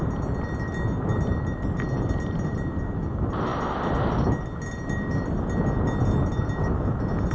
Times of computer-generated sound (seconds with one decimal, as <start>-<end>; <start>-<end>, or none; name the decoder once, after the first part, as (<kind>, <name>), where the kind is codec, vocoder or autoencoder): 1.1-2.8 (vocoder, BigVGAN v2)